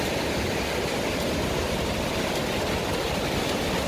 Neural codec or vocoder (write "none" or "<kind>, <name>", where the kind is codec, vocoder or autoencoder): none